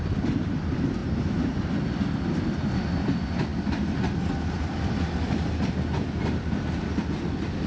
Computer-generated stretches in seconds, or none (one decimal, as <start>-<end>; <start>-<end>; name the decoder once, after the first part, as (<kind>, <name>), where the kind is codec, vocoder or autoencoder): none